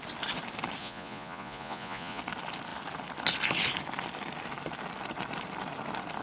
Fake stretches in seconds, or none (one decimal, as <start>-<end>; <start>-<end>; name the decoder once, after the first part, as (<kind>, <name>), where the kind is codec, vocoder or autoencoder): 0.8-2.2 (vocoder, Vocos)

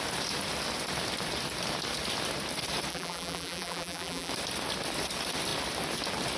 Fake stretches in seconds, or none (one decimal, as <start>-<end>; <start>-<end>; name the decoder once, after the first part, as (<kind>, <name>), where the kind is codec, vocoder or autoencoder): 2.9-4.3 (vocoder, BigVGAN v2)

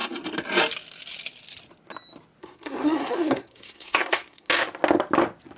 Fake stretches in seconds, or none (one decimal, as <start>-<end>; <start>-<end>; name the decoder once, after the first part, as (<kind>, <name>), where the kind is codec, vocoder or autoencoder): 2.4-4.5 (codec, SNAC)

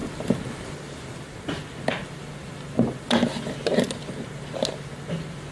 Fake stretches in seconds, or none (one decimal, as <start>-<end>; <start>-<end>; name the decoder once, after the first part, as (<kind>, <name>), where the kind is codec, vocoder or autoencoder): none